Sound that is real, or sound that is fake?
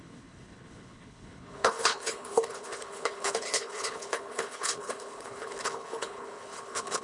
fake